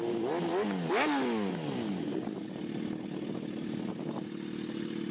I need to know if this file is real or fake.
real